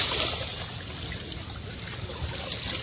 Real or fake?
real